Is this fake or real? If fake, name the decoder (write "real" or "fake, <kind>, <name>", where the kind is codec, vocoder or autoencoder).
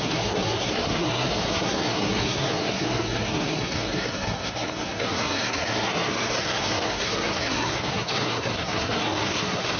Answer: fake, codec, SNAC